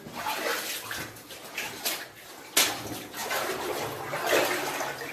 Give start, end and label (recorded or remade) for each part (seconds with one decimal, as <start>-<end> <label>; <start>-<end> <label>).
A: 0.0-5.1 recorded